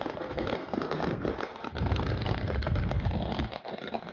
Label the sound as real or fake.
fake